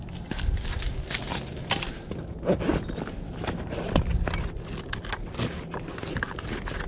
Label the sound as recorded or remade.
recorded